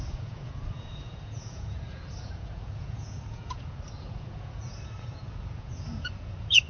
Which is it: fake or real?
fake